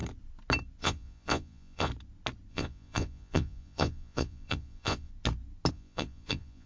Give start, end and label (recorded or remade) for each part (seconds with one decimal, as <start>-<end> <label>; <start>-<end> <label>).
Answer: 0.0-0.8 recorded; 0.8-1.9 remade; 1.9-2.5 recorded; 2.5-5.1 remade; 5.1-5.7 recorded; 5.7-6.7 remade